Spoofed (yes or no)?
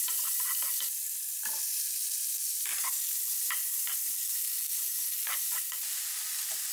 yes